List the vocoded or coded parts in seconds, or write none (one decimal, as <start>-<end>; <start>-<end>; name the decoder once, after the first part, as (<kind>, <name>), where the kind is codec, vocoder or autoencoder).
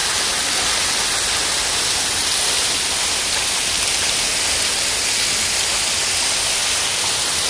none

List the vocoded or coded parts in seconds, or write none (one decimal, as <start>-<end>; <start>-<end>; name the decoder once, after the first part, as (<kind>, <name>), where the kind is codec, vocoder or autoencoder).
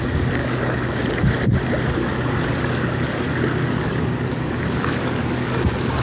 0.4-1.0 (codec, DAC); 2.0-5.6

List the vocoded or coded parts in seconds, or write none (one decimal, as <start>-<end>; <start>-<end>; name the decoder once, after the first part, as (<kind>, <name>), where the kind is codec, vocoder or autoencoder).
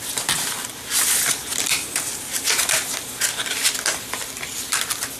0.0-1.5 (vocoder, BigVGAN v2); 2.2-5.2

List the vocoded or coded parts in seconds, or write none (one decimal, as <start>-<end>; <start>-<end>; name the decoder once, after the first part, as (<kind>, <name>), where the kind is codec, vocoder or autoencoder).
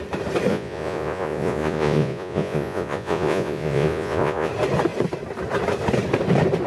0.5-4.5 (vocoder, Vocos)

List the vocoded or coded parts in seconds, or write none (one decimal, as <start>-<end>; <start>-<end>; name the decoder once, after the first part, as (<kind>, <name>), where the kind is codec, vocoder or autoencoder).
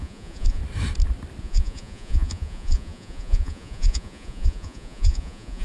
0.0-0.6 (vocoder, Vocos); 1.4-5.6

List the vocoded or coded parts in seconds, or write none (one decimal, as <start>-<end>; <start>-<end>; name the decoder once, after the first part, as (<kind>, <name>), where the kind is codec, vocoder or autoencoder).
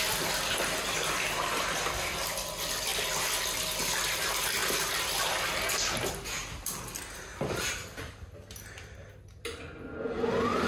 none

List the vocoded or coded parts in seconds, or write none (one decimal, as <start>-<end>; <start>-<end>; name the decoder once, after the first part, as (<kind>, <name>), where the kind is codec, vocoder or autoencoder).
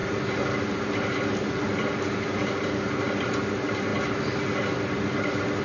0.0-0.6 (vocoder, BigVGAN v2)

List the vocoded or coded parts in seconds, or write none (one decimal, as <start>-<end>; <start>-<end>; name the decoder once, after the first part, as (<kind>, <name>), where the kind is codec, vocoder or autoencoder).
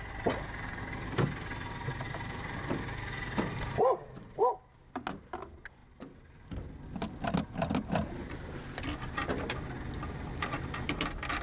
none